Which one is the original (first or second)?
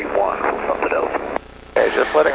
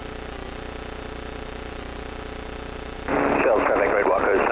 second